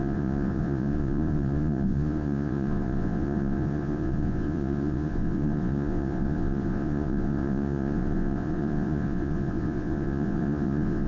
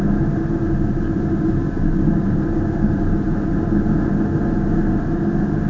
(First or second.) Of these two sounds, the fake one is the first